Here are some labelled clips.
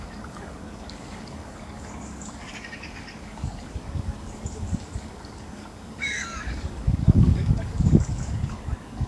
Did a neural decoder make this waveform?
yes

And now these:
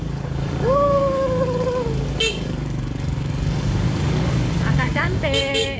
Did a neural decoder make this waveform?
yes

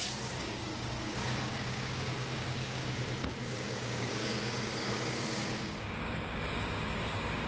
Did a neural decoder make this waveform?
yes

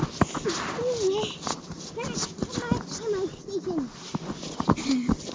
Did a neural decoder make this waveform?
no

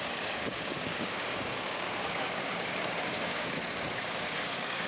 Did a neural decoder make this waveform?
yes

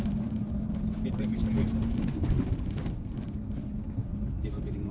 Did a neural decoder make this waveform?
no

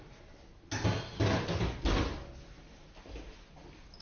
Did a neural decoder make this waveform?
no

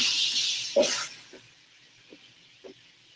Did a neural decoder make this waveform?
no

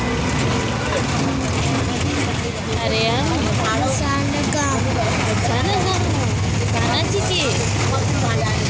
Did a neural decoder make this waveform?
no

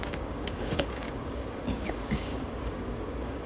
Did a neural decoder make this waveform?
yes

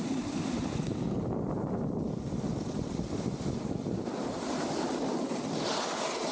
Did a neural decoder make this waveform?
no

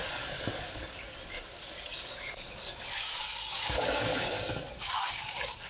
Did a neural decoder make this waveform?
yes